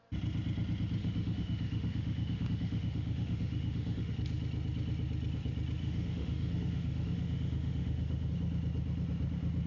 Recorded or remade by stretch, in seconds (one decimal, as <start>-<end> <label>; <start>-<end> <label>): 0.0-1.0 recorded; 1.0-4.1 remade; 4.1-5.8 recorded; 5.8-8.3 remade; 8.3-9.7 recorded